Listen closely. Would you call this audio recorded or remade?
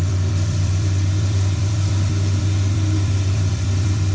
remade